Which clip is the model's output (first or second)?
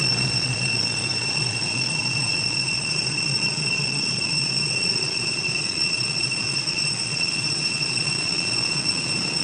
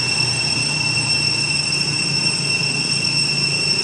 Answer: first